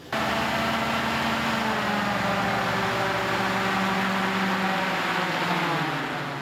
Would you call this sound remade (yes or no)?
no